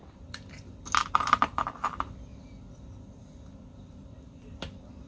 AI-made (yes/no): yes